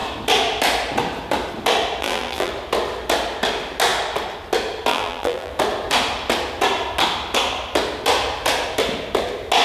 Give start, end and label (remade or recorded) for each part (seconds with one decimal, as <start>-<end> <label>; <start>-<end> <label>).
0.0-2.0 recorded; 2.0-2.5 remade; 2.5-4.9 recorded; 4.9-5.5 remade; 5.5-9.6 recorded